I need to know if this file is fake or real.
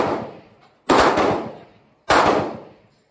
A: real